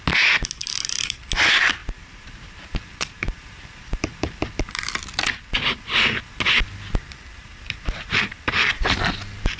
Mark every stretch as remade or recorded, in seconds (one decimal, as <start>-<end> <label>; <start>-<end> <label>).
0.0-0.6 recorded; 0.6-1.2 remade; 1.2-1.8 recorded; 1.8-4.5 remade; 4.5-7.4 recorded; 7.4-8.4 remade; 8.4-9.6 recorded